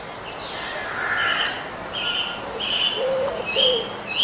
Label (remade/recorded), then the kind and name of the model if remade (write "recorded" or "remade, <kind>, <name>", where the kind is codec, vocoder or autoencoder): recorded